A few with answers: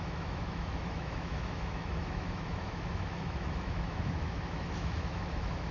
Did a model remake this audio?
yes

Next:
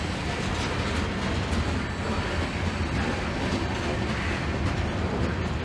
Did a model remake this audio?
no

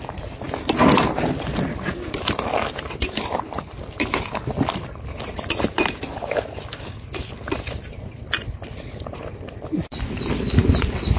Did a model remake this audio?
no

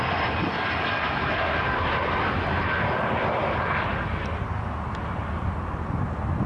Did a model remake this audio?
no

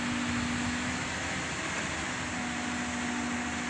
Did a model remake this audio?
no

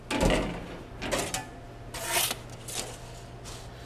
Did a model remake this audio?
no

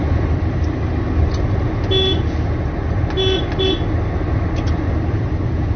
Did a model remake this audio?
no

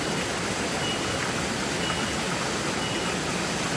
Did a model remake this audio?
no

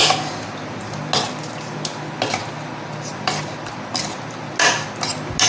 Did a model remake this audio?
no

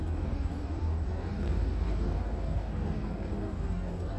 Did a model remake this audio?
yes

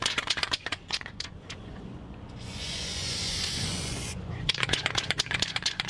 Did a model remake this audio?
yes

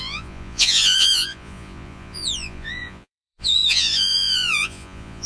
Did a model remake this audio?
yes